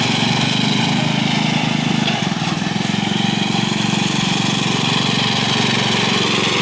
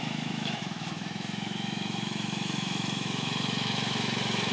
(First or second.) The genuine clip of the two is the first